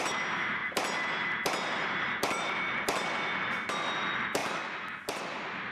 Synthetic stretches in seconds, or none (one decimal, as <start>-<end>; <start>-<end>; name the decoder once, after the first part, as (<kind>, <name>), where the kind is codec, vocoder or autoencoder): none